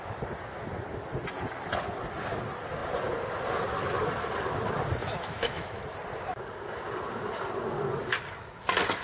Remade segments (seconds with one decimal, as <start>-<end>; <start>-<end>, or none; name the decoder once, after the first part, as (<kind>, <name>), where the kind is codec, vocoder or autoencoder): 5.0-5.8 (autoencoder, DAC-VAE)